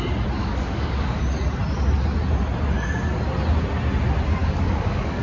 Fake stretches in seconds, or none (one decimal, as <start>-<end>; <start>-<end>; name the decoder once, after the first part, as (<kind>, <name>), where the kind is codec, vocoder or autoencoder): 0.4-1.2 (codec, DAC); 4.4-5.2